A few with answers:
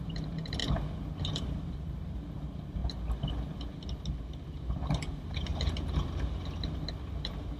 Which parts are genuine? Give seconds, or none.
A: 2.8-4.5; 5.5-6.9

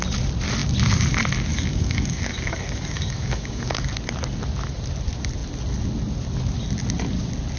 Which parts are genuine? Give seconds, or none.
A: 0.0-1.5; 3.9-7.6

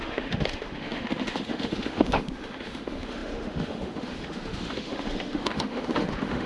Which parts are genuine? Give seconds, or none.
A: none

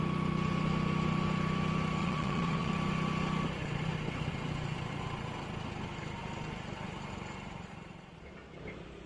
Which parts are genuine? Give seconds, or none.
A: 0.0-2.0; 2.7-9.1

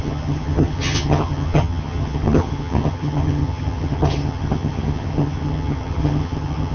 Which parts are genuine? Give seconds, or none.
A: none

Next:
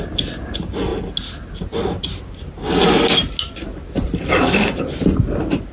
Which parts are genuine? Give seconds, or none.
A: 0.0-5.7